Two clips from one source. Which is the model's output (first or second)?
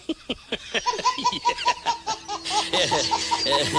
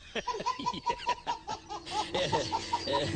second